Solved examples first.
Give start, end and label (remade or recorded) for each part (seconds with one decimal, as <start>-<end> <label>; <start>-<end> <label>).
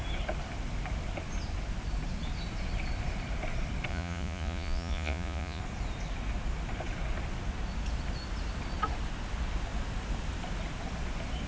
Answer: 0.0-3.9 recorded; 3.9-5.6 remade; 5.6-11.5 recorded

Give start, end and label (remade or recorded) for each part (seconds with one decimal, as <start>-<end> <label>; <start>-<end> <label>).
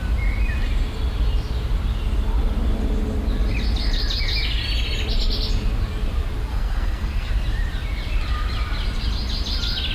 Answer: 0.0-6.5 recorded; 6.5-7.3 remade; 7.3-9.9 recorded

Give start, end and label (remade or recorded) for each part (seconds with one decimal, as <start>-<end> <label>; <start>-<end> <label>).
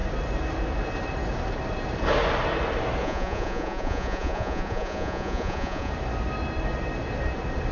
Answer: 0.0-3.0 recorded; 3.0-5.9 remade; 5.9-7.7 recorded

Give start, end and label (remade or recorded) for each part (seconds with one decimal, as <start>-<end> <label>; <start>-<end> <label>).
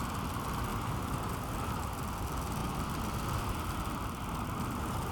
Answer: 0.0-5.1 recorded